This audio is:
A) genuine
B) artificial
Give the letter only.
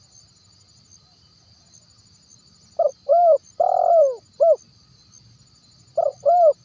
A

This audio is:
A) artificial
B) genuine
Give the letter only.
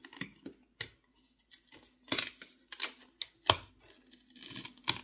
B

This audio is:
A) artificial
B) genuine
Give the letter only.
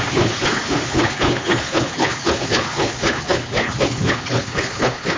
A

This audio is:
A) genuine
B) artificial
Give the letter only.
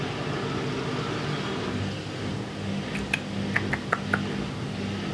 A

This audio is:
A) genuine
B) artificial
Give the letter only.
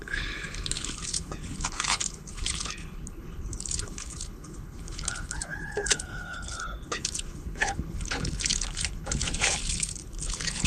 B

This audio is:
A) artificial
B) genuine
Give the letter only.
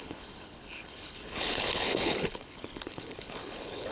A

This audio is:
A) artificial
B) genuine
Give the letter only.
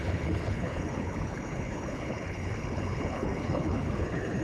A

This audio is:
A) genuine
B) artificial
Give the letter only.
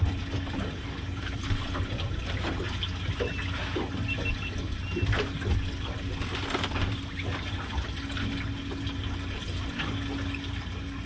A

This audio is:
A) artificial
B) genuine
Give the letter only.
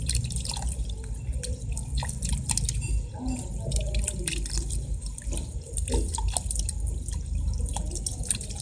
B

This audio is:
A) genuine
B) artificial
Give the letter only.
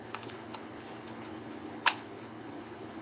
B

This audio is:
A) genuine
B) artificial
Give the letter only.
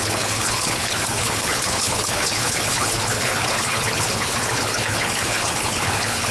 B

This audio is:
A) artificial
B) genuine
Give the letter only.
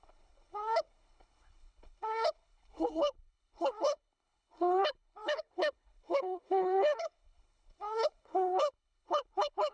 A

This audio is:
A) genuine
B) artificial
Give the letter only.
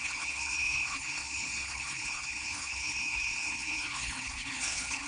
B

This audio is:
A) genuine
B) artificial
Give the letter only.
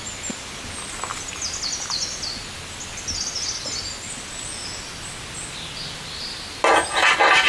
A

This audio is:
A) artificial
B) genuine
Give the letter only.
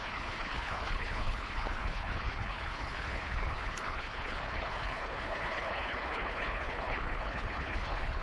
A